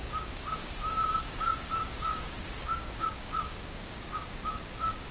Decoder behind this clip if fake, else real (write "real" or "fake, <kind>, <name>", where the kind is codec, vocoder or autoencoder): fake, codec, DAC